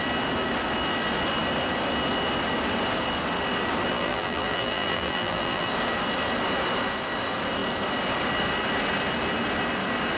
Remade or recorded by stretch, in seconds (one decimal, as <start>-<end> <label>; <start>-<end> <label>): 0.0-3.9 recorded; 3.9-5.7 remade; 5.7-10.2 recorded